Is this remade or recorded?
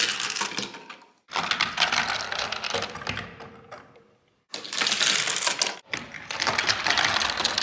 recorded